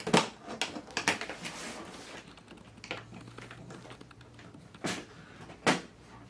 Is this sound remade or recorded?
recorded